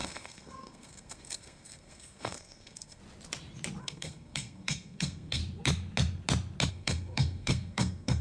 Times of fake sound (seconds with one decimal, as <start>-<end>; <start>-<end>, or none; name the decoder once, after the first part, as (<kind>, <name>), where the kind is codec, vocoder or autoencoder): 0.0-3.0 (codec, SNAC); 3.8-5.4; 6.7-8.2